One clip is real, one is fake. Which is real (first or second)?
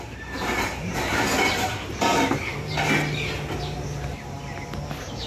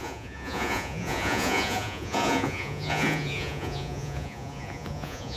first